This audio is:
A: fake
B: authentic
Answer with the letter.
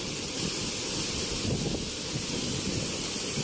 B